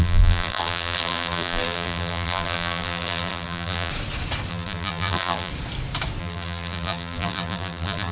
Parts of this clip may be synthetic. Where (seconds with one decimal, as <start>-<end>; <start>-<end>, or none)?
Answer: 0.0-3.9; 4.5-5.5; 6.2-8.1